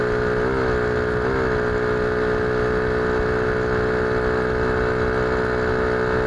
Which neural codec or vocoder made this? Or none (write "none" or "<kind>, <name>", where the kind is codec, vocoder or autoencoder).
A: none